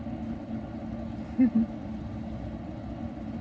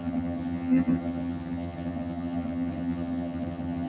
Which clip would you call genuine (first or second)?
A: first